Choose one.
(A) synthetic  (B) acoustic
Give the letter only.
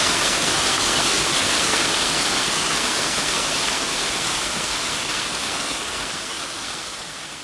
A